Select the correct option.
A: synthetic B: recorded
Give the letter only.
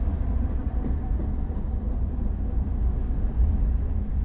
B